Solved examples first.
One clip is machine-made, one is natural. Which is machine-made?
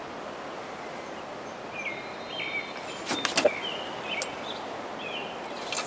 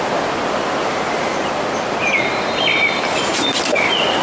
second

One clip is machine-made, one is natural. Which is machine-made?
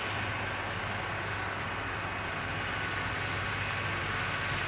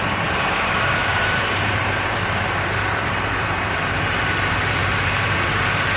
second